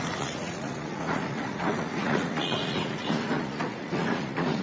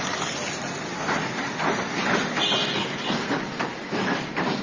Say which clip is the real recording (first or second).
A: second